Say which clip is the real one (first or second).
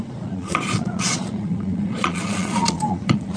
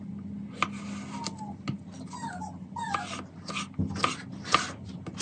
second